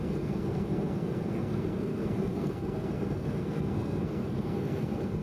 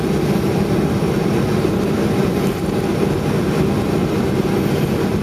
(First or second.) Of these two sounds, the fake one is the first